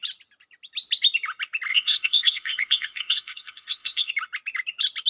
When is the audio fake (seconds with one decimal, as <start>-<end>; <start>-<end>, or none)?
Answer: 1.7-4.1